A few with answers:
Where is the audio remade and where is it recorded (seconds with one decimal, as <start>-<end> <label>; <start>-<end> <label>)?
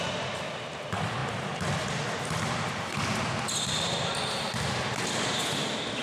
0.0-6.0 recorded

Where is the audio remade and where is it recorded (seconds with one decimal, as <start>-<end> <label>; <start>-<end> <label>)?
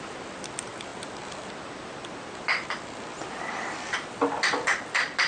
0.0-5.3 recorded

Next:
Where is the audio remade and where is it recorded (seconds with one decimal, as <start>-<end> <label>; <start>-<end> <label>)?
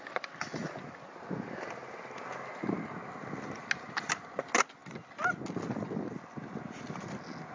0.0-7.5 recorded